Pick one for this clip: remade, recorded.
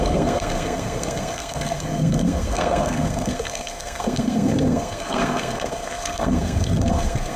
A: remade